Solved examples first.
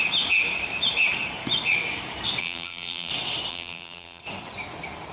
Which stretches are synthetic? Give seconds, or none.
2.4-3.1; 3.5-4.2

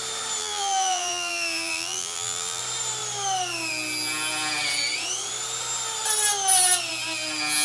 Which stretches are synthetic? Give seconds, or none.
0.4-2.6

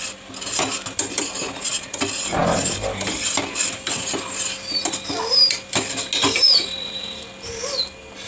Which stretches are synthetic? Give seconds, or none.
none